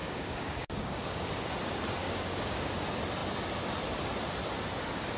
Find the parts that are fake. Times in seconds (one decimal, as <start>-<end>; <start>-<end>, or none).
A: 0.0-1.3; 2.0-2.7